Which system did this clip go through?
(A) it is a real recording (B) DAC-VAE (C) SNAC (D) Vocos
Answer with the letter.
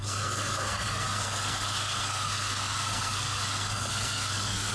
C